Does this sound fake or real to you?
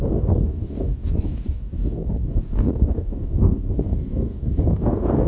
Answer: fake